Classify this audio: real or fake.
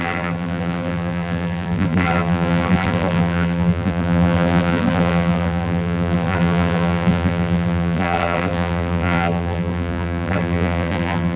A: fake